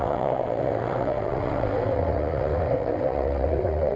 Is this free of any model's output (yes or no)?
no